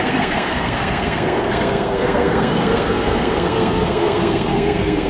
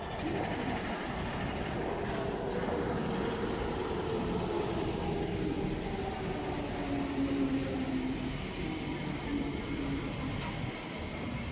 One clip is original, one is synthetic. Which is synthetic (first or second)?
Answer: first